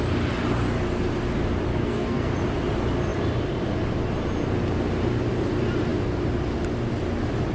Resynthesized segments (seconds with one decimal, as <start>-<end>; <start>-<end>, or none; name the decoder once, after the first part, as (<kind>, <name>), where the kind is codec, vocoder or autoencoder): 1.7-2.3 (codec, SNAC)